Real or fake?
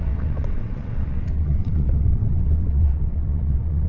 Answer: fake